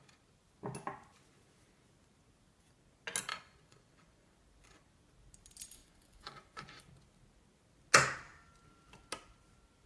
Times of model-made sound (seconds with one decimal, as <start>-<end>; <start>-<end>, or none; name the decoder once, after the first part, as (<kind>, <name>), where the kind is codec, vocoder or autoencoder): 3.3-4.3 (vocoder, Vocos); 5.8-6.8